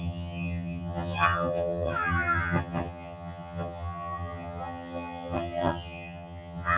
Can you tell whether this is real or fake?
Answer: fake